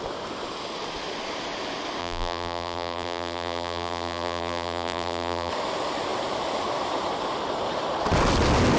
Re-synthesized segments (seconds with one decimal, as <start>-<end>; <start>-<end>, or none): 2.0-5.5